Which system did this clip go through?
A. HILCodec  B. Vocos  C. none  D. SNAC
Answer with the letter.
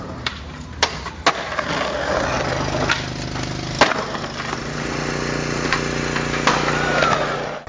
C